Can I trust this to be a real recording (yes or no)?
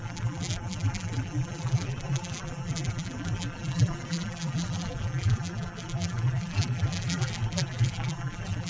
no